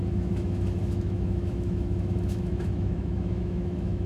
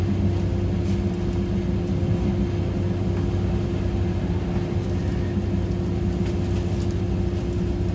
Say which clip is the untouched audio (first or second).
second